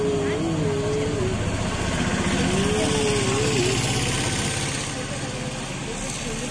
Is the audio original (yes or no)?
yes